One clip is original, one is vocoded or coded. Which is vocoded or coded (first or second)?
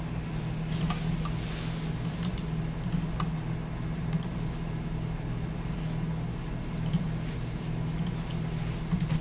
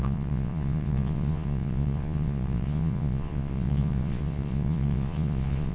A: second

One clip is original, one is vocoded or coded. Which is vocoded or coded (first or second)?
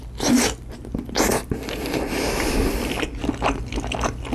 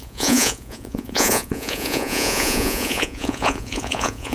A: second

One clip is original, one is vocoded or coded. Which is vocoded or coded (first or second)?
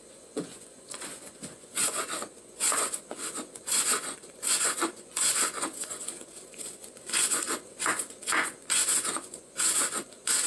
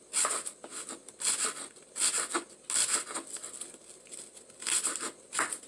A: first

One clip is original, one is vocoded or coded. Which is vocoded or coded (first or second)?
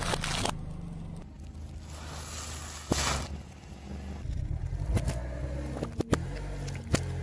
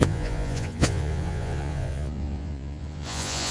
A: second